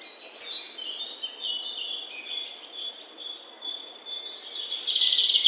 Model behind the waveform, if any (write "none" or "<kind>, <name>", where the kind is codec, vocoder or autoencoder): none